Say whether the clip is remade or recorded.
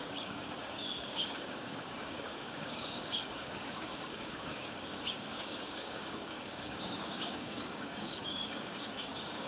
remade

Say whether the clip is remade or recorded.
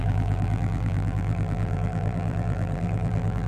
remade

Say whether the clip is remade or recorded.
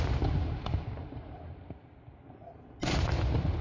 recorded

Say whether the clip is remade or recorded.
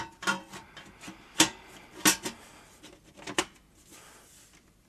recorded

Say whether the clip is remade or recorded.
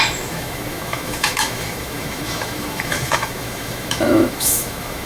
remade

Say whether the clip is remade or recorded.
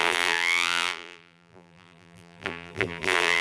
remade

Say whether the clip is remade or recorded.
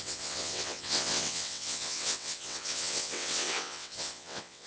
remade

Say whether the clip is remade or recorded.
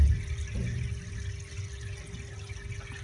recorded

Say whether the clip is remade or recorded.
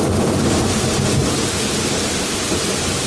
remade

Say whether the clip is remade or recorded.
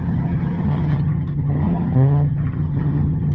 remade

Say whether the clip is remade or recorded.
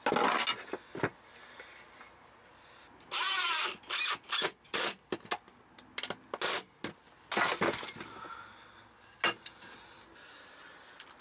recorded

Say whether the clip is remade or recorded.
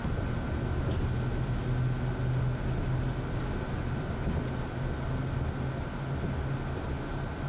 recorded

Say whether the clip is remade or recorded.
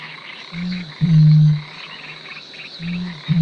remade